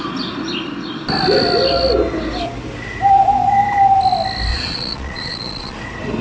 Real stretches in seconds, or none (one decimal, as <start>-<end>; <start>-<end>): 0.0-4.5; 5.8-6.2